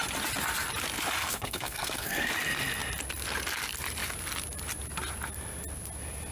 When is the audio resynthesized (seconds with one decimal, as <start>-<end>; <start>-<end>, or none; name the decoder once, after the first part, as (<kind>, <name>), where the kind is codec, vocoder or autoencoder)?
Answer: 1.2-2.3 (codec, SNAC)